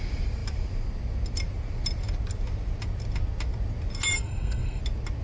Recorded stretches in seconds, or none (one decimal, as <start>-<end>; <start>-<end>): 0.0-4.1; 4.8-5.2